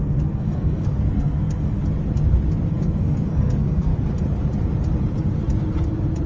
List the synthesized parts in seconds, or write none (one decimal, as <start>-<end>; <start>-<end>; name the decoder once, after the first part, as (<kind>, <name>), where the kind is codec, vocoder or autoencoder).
0.0-1.8 (codec, SNAC); 2.7-3.9